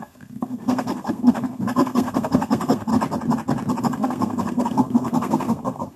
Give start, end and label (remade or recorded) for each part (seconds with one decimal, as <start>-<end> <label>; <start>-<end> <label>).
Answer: 0.0-2.9 remade; 2.9-3.8 recorded; 3.8-6.0 remade